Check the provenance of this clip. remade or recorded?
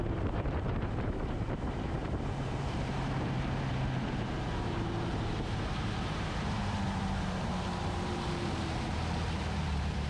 remade